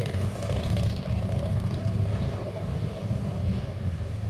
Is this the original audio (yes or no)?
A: no